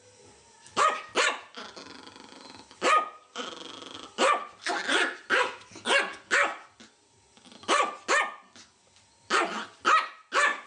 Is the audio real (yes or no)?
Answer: yes